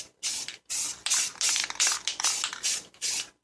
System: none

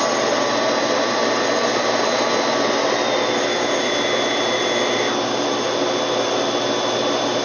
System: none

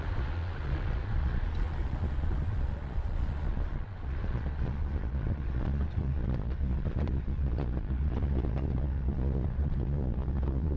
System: vocoder, Vocos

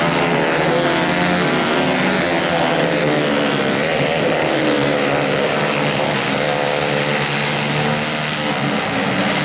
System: none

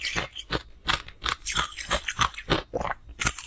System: none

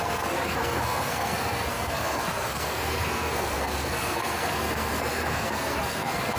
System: codec, SNAC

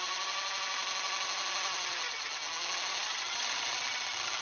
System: none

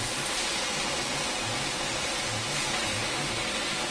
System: none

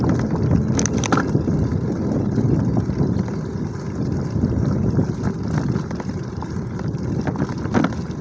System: none